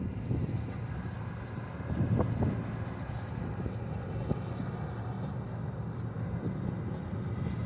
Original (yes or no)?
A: yes